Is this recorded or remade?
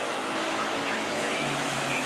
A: remade